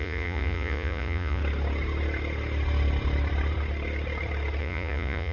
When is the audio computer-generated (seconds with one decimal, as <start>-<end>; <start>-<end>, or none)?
0.0-1.4; 4.6-5.3